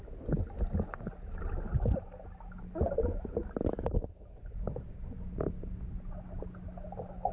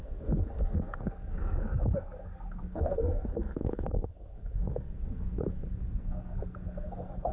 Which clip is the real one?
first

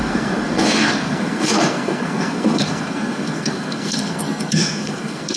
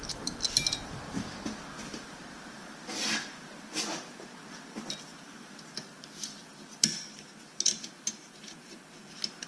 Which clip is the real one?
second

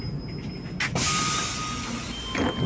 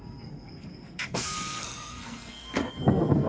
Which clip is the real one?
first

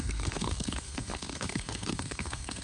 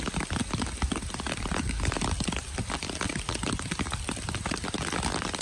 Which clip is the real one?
second